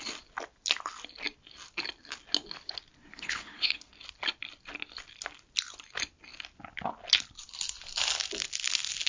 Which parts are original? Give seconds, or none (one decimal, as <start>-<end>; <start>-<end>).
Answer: 0.0-3.1; 3.9-9.1